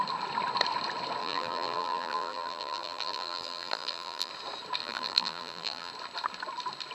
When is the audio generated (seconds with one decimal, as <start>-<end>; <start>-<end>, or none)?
1.2-4.3; 4.8-5.9